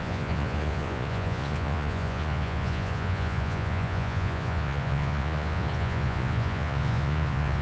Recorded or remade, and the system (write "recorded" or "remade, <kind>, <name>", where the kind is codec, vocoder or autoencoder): remade, vocoder, Vocos